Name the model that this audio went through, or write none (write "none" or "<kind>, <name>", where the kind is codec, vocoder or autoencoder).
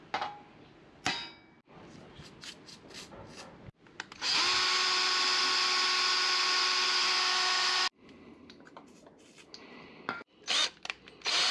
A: none